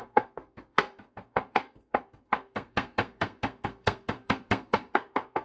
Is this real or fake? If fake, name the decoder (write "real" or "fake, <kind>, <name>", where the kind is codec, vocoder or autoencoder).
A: fake, codec, SNAC